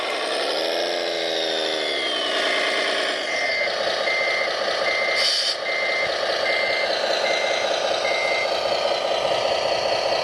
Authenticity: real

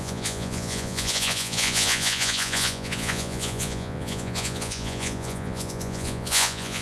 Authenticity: fake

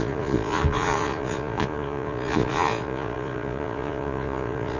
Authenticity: fake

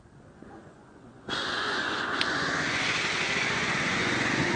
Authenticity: fake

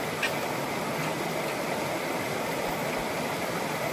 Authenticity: real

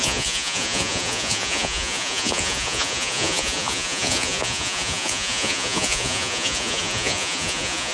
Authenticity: fake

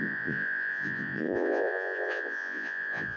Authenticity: fake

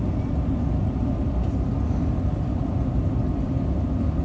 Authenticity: real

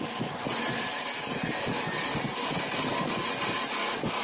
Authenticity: real